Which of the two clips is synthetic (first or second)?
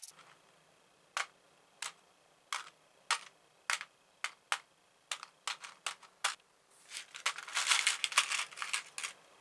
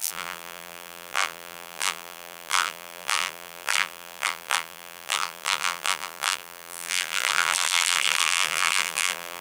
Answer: second